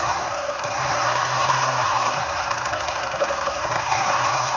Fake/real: fake